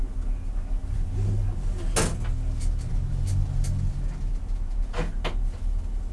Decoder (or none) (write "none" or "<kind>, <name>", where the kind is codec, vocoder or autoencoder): none